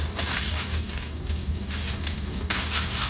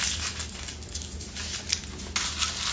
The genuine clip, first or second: second